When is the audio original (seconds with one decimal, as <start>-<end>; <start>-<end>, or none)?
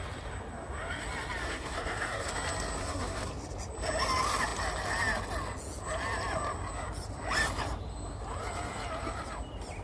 0.0-1.4; 2.3-2.8; 3.3-9.8